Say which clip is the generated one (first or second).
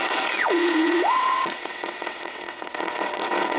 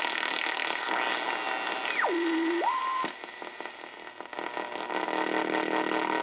first